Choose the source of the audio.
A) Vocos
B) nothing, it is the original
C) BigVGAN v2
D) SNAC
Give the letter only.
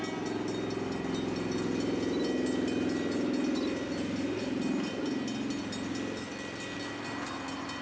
B